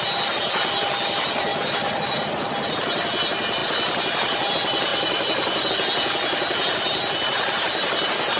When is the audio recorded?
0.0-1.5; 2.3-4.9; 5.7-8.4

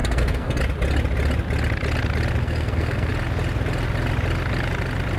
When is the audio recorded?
0.6-2.4; 3.1-5.2

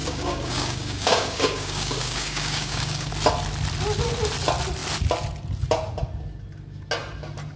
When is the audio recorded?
3.1-7.6

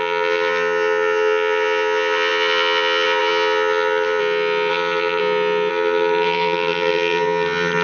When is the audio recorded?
4.2-4.7; 5.2-5.7

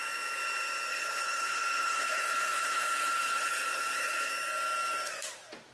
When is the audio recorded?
0.0-0.9; 4.3-5.7

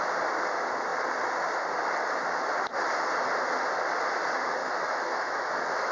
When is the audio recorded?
0.0-4.6

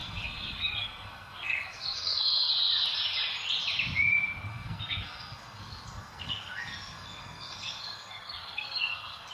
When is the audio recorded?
2.5-4.5

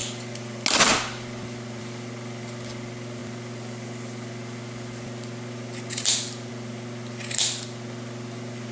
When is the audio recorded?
0.0-8.7